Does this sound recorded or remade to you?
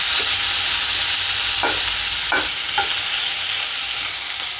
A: recorded